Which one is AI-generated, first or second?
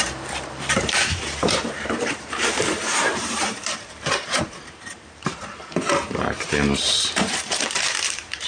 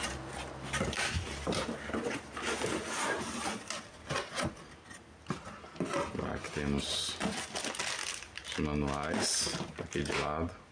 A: first